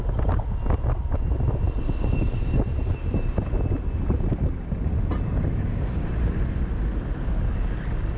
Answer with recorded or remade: recorded